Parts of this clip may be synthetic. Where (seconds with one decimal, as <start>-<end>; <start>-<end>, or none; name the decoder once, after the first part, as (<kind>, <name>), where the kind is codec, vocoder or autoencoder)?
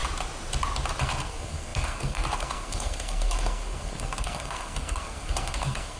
1.0-6.0 (codec, SNAC)